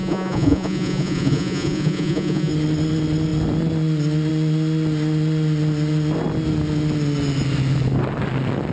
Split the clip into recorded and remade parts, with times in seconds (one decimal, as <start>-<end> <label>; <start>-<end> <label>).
0.0-2.5 remade; 2.5-8.7 recorded